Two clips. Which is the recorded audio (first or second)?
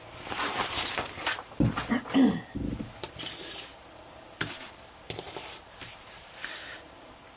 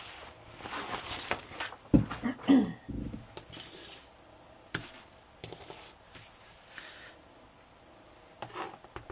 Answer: second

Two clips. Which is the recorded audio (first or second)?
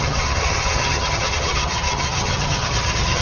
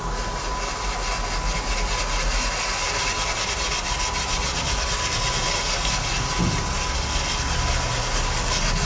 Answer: second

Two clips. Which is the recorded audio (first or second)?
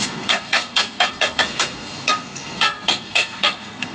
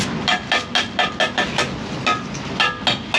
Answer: second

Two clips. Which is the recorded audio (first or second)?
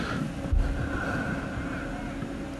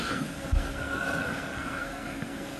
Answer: first